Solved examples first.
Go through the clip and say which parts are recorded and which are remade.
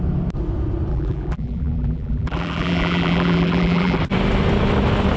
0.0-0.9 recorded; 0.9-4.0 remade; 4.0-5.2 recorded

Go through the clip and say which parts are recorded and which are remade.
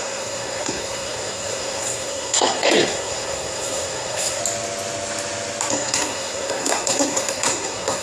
0.0-4.4 remade; 4.4-5.7 recorded; 5.7-8.0 remade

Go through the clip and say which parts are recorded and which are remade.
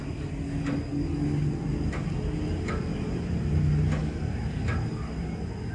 0.0-5.7 recorded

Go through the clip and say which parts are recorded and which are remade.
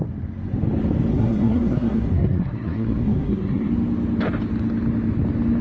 0.0-1.1 recorded; 1.1-3.7 remade; 3.7-5.6 recorded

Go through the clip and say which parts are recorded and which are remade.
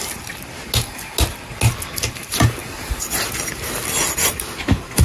0.0-5.0 recorded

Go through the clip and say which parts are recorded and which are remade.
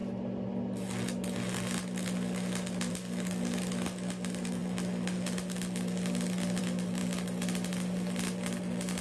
0.0-9.0 recorded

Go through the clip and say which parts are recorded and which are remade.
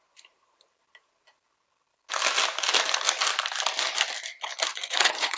0.0-4.7 recorded; 4.7-5.4 remade